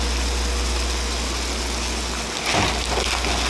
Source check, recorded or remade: recorded